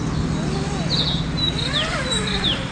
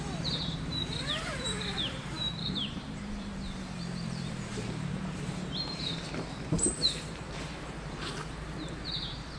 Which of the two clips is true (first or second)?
first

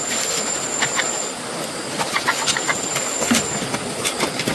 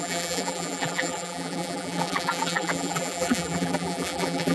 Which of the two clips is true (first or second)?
first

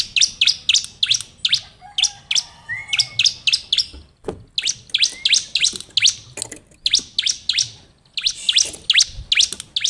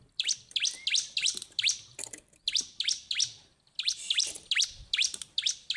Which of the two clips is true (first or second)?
first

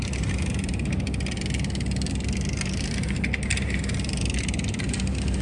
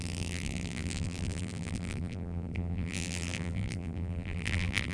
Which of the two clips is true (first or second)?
first